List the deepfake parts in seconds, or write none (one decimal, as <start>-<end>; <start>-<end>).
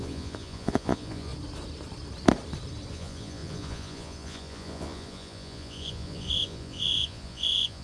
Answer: 0.0-1.3; 2.9-7.8